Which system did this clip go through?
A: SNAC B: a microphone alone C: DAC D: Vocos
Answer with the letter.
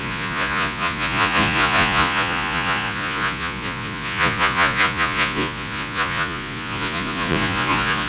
D